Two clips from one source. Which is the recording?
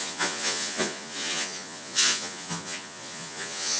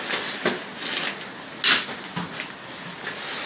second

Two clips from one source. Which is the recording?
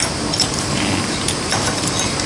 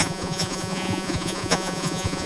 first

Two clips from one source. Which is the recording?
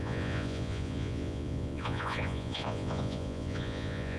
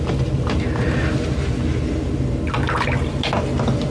second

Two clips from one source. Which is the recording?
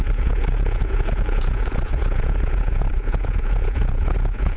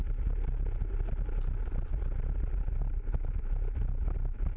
second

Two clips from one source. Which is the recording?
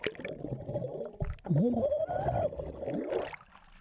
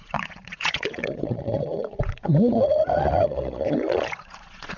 first